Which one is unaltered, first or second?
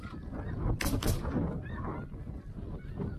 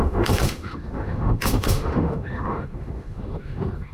first